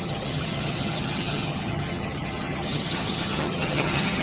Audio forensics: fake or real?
fake